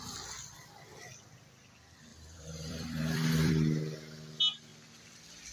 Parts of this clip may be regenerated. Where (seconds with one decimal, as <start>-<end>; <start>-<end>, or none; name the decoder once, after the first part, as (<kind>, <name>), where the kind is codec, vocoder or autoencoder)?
2.1-3.5 (vocoder, BigVGAN v2)